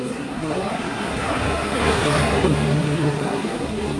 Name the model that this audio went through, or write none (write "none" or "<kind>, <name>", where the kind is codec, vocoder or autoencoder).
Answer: codec, SNAC